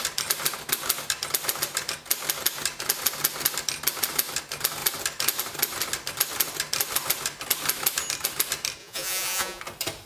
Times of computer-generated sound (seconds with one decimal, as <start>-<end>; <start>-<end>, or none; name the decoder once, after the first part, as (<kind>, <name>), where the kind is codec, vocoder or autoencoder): 8.8-9.6 (vocoder, Vocos)